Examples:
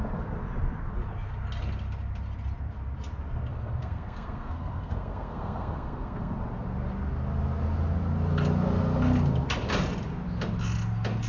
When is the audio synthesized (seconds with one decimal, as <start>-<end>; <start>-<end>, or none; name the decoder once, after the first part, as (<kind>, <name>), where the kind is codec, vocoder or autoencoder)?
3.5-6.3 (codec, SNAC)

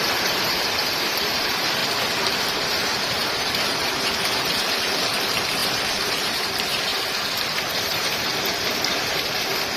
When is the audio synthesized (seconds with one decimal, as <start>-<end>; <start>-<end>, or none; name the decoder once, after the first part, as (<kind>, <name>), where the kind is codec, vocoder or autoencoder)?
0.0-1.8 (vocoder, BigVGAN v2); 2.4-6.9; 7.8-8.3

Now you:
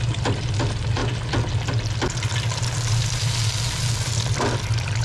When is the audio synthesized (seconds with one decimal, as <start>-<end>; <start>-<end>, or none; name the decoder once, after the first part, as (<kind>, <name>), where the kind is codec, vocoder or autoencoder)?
0.0-1.0 (vocoder, BigVGAN v2); 3.8-5.0